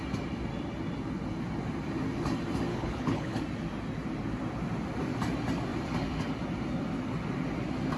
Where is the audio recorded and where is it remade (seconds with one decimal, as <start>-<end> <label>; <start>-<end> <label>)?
0.0-2.7 recorded; 2.7-3.4 remade; 3.4-8.0 recorded